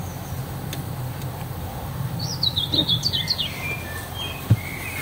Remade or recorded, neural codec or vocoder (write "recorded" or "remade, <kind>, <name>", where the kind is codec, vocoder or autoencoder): recorded